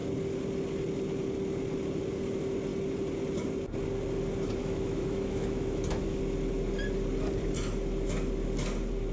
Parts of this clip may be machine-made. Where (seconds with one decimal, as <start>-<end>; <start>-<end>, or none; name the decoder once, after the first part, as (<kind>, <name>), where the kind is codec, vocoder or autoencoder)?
4.6-6.2 (autoencoder, DAC-VAE)